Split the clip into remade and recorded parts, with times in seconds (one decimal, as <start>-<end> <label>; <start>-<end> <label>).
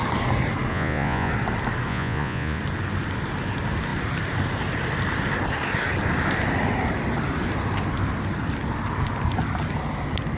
0.0-0.7 recorded; 0.7-1.3 remade; 1.3-1.9 recorded; 1.9-2.6 remade; 2.6-10.4 recorded